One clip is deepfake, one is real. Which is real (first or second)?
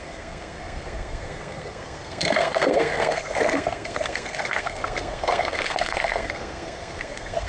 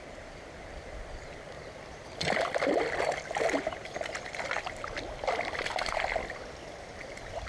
second